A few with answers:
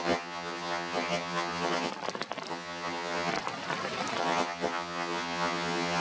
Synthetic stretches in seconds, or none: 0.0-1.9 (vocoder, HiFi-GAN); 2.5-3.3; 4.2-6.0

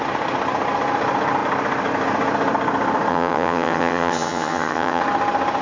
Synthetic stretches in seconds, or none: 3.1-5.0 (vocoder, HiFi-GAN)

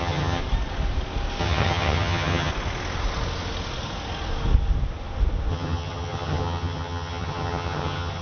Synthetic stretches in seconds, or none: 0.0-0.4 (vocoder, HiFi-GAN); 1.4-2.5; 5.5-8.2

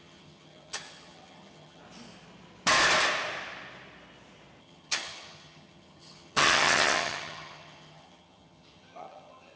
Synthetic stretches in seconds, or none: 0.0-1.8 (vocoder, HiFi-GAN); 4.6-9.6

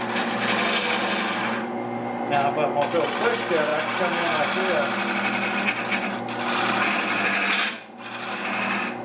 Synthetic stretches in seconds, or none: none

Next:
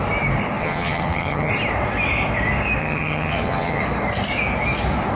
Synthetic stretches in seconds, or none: 0.6-1.5 (vocoder, HiFi-GAN); 2.8-3.8